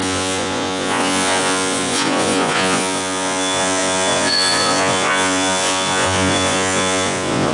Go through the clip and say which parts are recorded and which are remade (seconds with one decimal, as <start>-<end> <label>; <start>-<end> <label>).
0.0-7.5 remade